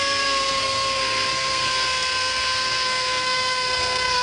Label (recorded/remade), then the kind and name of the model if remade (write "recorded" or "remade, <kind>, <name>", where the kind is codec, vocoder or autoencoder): remade, codec, SNAC